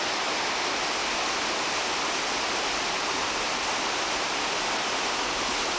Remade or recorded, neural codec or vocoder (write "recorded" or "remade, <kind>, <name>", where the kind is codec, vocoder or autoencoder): recorded